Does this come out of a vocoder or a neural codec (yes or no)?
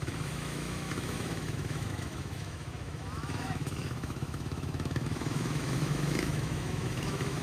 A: yes